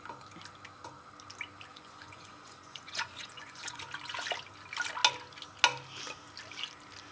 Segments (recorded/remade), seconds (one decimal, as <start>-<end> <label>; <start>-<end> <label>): 0.0-1.7 recorded; 1.7-3.8 remade; 3.8-7.1 recorded